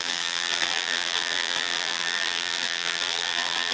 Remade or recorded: remade